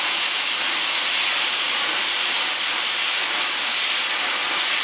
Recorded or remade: recorded